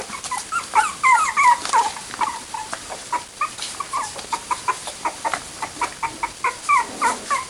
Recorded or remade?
remade